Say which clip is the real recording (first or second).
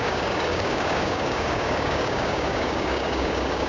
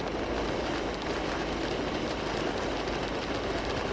second